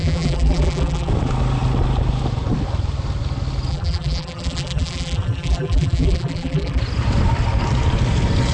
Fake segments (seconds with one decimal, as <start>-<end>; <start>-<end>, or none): 0.0-1.1; 3.7-6.8